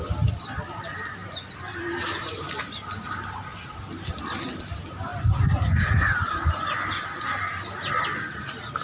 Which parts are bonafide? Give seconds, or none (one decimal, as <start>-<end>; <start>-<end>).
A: 0.0-1.2; 3.6-8.8